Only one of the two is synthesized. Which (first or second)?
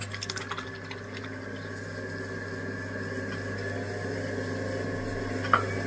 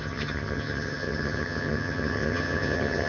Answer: second